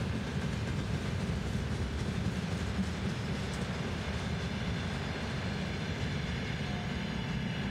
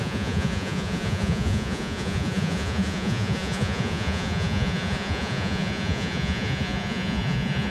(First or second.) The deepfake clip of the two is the second